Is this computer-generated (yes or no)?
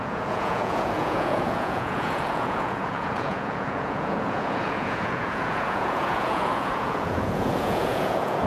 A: yes